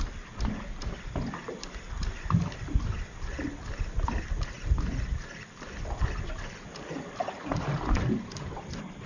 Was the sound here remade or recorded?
recorded